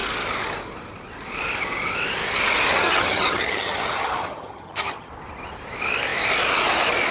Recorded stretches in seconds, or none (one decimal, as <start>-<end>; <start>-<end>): 0.0-2.7; 5.1-7.1